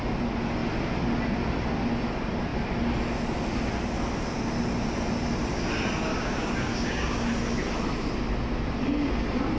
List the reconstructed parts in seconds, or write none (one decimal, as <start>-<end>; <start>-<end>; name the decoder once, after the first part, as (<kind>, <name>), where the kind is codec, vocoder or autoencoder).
6.1-7.3 (codec, DAC)